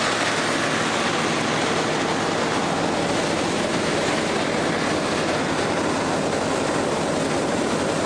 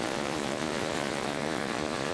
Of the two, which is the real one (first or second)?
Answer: first